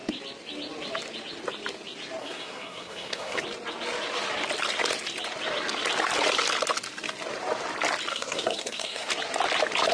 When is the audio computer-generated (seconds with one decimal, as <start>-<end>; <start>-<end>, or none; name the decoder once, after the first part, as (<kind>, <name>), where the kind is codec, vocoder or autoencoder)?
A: 2.2-3.4 (codec, SNAC); 8.1-9.1